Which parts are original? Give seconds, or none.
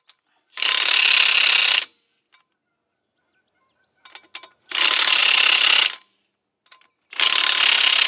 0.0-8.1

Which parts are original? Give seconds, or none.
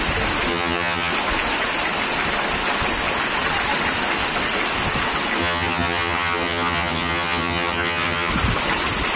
0.0-0.5; 1.1-5.4; 8.3-9.2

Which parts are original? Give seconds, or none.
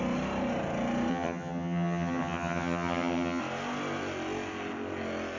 0.0-1.1; 3.4-5.4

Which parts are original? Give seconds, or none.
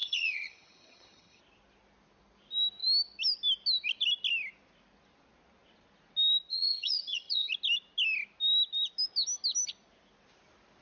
1.4-6.5; 7.5-10.8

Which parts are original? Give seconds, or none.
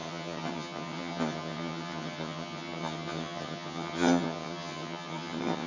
none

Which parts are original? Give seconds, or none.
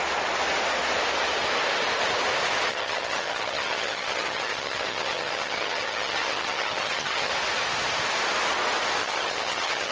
0.0-2.7; 7.3-9.0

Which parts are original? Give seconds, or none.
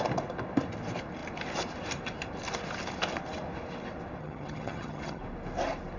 0.0-4.2; 5.2-6.0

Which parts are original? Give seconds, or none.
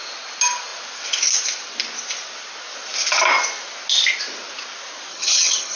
0.0-5.1